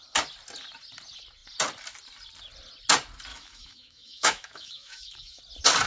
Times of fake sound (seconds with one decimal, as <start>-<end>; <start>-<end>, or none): 3.3-5.4

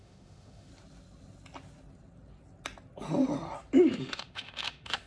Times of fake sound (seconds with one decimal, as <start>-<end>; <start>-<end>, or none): 0.0-0.7; 3.8-5.1

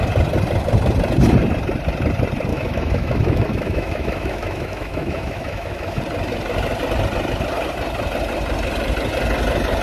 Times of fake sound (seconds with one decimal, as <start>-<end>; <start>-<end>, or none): 2.5-6.0

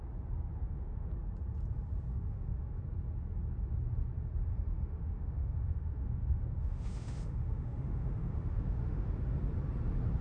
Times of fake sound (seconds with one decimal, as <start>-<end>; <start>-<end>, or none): 0.6-1.1; 2.1-2.8; 4.5-9.1

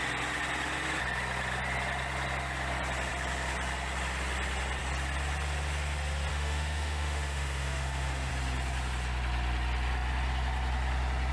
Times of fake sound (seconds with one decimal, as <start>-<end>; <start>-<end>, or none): 6.3-8.3

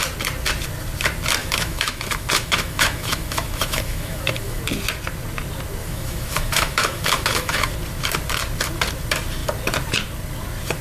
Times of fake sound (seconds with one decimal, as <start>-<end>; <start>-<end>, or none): 1.4-4.6; 5.8-7.7

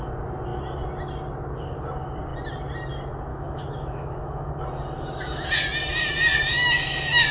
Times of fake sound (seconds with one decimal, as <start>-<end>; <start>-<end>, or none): 3.3-4.5

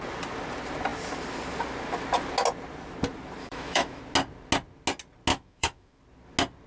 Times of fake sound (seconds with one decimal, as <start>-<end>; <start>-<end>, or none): 3.4-4.0; 5.3-6.0